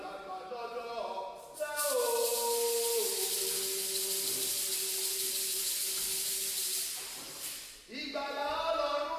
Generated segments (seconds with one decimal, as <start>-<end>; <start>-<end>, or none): none